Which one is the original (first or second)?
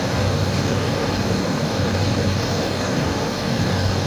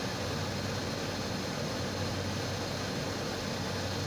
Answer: second